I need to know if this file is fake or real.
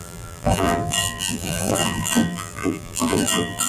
fake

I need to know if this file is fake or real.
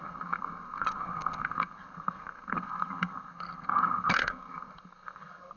fake